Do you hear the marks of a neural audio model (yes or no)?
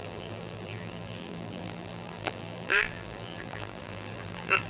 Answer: yes